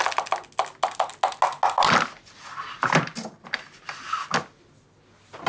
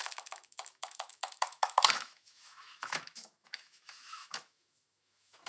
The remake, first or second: second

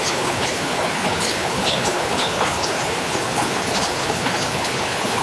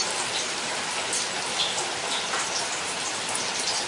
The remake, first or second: first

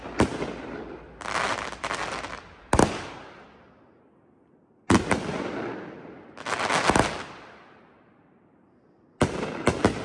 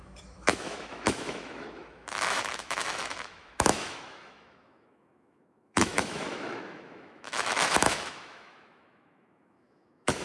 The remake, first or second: second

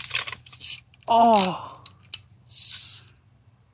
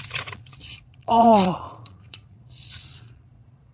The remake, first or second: second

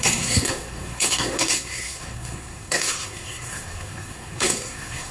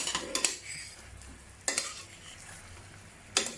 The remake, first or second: first